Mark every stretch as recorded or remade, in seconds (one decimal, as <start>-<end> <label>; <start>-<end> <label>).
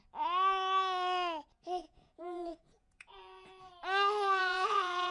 0.0-1.8 recorded; 1.8-3.7 remade; 3.7-4.4 recorded; 4.4-5.1 remade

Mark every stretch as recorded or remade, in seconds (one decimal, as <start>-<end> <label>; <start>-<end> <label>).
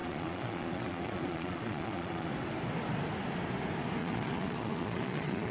0.0-2.3 remade; 2.3-4.0 recorded; 4.0-5.5 remade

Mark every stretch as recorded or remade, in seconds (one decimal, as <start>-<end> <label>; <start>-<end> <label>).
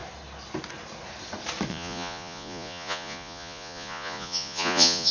0.0-1.7 recorded; 1.7-5.1 remade